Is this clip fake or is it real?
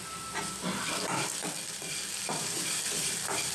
fake